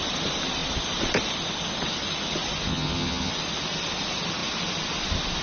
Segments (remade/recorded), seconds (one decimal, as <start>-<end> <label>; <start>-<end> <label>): 0.0-2.7 recorded; 2.7-3.3 remade; 3.3-5.4 recorded